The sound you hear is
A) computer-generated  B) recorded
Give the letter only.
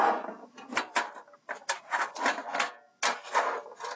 B